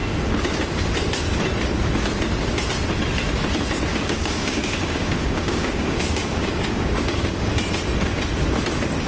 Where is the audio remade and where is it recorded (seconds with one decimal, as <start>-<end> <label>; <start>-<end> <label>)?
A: 0.0-3.9 recorded; 3.9-7.5 remade; 7.5-9.1 recorded